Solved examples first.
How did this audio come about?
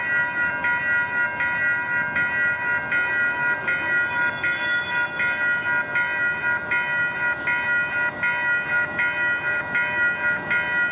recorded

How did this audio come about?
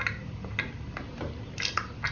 recorded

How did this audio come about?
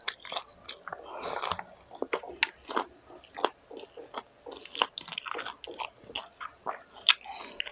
recorded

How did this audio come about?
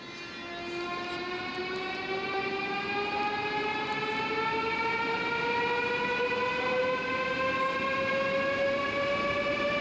recorded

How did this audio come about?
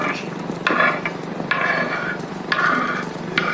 recorded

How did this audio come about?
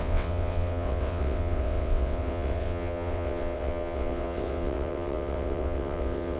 remade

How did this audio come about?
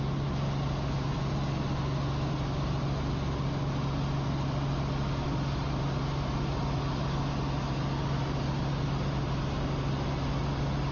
recorded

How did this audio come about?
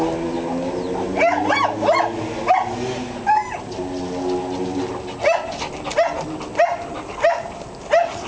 recorded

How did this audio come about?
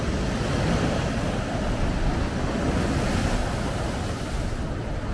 recorded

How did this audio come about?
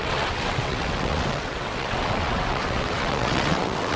remade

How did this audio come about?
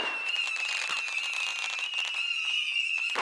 recorded